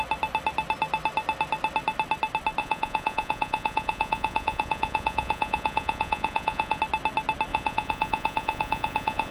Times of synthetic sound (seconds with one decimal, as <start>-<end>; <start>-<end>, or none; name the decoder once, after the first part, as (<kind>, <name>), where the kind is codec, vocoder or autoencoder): 2.6-6.8 (vocoder, Vocos); 7.5-9.3